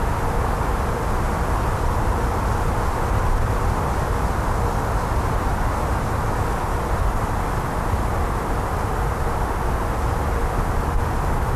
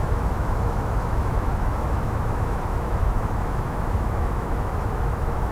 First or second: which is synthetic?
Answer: second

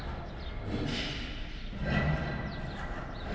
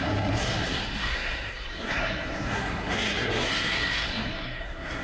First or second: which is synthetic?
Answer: second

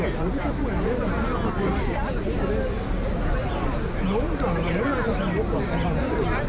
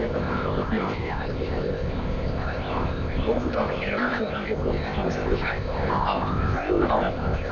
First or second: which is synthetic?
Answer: second